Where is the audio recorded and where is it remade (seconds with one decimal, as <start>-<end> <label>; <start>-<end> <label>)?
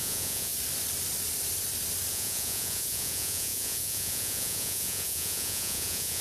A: 0.0-0.5 remade; 0.5-2.1 recorded; 2.1-6.2 remade